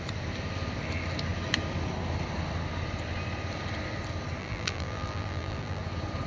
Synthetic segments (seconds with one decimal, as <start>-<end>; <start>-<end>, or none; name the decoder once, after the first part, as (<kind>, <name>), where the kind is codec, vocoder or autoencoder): 4.4-5.8 (vocoder, BigVGAN v2)